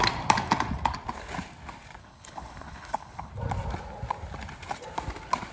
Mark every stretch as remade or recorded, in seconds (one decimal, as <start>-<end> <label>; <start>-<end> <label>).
0.0-2.0 recorded; 2.0-3.3 remade; 3.3-5.5 recorded